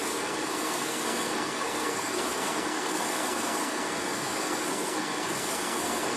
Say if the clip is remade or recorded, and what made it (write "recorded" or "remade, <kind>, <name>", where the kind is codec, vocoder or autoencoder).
remade, codec, SNAC